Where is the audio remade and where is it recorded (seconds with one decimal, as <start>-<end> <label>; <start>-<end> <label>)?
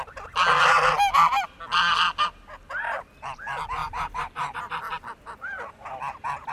0.0-3.8 recorded; 3.8-4.6 remade; 4.6-6.5 recorded